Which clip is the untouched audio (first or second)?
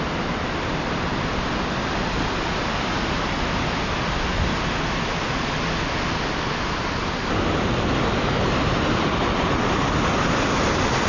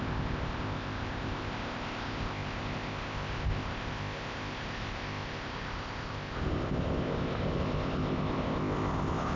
first